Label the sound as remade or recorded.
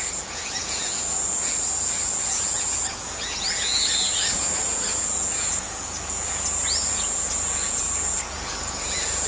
remade